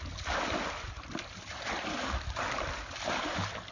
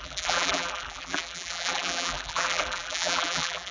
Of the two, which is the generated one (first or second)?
second